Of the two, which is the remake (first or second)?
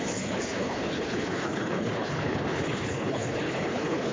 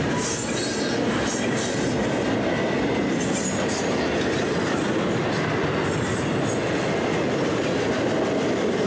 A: first